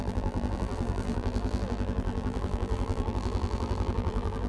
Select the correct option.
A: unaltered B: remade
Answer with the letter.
B